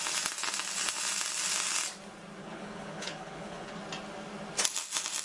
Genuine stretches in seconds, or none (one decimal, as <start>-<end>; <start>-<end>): 0.0-2.4; 3.8-5.2